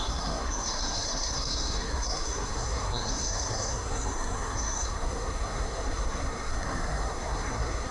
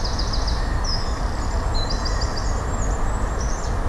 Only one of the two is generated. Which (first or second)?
first